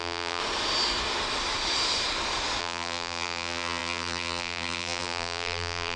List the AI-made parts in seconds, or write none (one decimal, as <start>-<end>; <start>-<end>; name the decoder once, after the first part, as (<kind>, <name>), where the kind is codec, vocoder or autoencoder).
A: 0.0-0.4 (vocoder, BigVGAN v2); 2.6-6.0